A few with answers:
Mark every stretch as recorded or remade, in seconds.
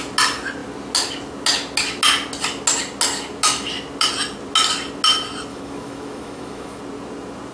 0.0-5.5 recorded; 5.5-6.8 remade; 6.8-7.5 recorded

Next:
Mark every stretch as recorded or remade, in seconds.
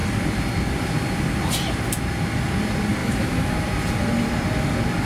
0.0-3.0 recorded; 3.0-3.5 remade; 3.5-5.1 recorded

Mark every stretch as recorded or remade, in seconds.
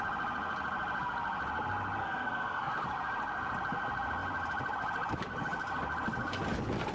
0.0-2.0 recorded; 2.0-2.7 remade; 2.7-6.9 recorded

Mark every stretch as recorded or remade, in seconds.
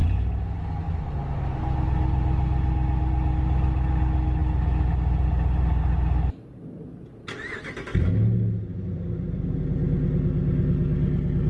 0.0-11.5 recorded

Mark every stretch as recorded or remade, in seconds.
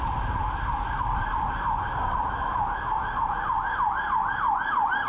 0.0-5.1 recorded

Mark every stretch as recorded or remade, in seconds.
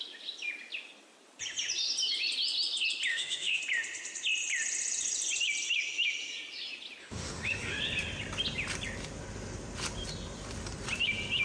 0.0-3.1 recorded; 3.1-3.6 remade; 3.6-7.0 recorded; 7.0-7.8 remade; 7.8-11.4 recorded